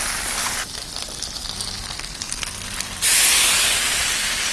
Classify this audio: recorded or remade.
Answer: recorded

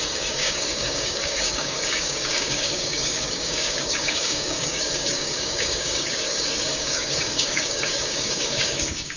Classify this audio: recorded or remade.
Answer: remade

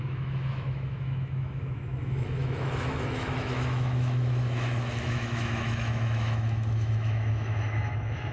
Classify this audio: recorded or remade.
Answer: remade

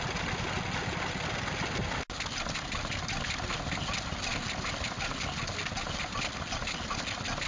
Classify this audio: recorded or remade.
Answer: recorded